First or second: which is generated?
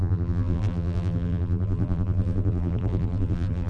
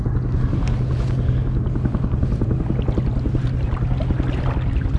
first